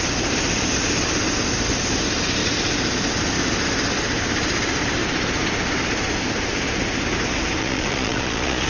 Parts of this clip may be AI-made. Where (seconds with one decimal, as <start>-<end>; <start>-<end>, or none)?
7.6-8.7